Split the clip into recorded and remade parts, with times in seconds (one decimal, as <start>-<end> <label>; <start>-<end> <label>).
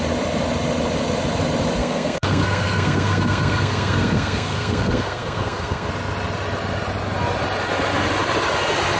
0.0-1.8 recorded; 1.8-5.9 remade; 5.9-9.0 recorded